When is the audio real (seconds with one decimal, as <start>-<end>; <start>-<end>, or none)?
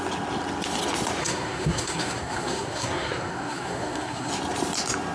0.0-1.2; 4.3-5.1